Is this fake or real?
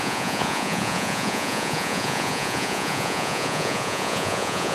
fake